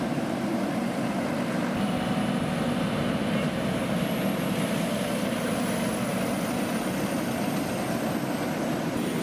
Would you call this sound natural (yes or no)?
yes